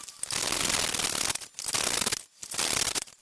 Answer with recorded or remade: recorded